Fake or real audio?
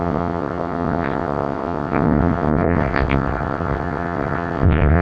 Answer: fake